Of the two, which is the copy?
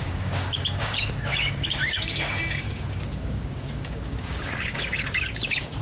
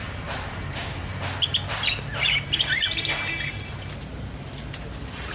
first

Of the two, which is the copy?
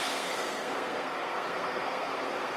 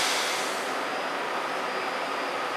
first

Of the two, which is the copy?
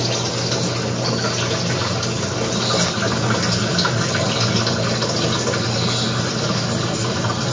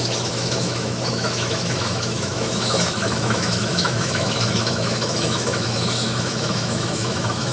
second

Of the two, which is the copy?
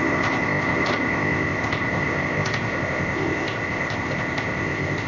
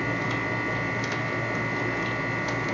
first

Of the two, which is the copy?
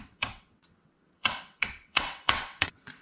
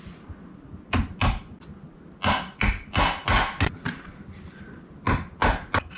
first